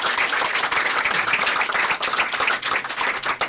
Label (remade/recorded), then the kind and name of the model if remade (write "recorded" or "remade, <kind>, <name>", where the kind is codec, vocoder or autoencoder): recorded